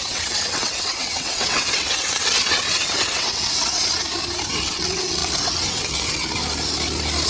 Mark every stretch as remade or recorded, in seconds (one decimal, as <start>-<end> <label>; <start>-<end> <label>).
0.0-3.9 remade; 3.9-4.5 recorded; 4.5-6.4 remade; 6.4-7.3 recorded